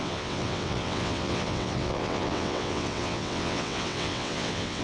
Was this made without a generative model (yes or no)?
no